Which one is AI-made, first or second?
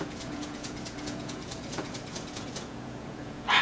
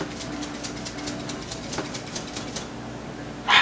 first